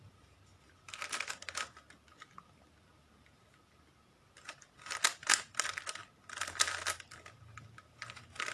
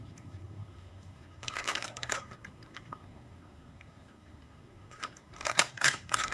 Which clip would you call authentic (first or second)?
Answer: first